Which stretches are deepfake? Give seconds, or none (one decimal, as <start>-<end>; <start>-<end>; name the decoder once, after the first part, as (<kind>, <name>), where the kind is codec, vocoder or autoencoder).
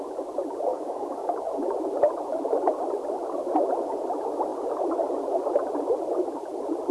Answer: 0.7-1.4 (codec, DAC)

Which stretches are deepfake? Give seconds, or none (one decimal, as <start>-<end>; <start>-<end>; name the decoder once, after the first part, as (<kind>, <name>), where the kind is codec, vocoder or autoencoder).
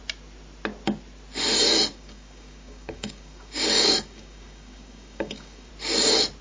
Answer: 1.9-5.7 (codec, DAC)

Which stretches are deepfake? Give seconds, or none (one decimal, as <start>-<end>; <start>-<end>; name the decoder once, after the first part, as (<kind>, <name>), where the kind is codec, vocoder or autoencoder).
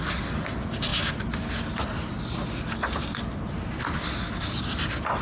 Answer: none